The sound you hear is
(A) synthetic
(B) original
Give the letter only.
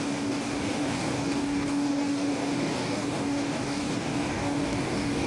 A